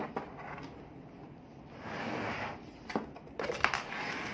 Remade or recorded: recorded